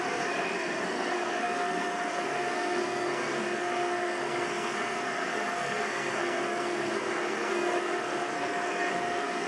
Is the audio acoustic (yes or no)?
no